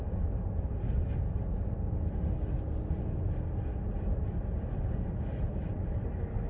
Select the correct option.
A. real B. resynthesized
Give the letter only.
A